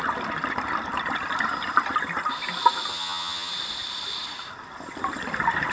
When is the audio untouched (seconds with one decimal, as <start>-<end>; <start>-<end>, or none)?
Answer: 0.0-2.9; 3.5-5.7